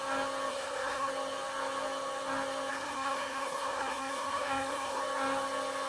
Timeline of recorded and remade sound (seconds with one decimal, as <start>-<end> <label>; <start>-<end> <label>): 0.0-0.5 recorded; 0.5-1.1 remade; 1.1-2.7 recorded; 2.7-5.0 remade; 5.0-5.9 recorded